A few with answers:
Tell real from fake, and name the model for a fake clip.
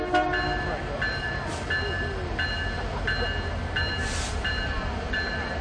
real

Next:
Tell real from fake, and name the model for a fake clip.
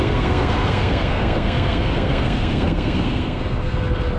fake, codec, SNAC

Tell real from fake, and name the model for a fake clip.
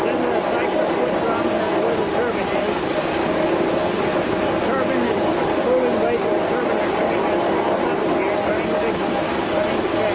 real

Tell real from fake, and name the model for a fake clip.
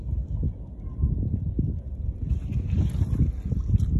real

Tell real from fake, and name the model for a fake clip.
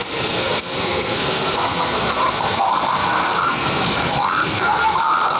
fake, codec, SNAC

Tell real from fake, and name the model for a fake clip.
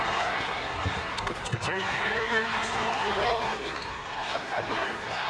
fake, codec, SNAC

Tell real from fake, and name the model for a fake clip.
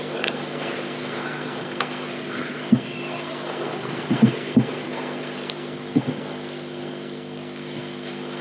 fake, codec, SNAC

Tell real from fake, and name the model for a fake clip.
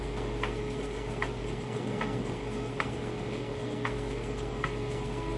fake, codec, SNAC